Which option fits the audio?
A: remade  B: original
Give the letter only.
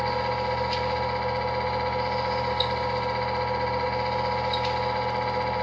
B